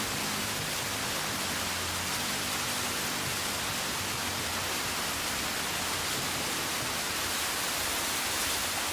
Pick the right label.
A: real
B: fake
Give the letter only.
A